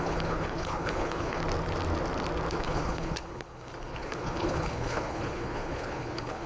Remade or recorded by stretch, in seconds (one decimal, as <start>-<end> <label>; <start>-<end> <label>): 0.0-1.4 remade; 1.4-2.5 recorded; 2.5-6.5 remade